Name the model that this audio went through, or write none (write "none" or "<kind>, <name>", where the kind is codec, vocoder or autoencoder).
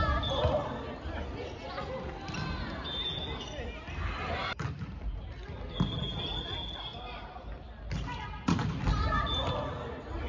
none